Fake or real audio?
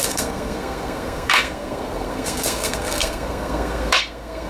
fake